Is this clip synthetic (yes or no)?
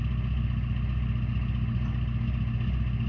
no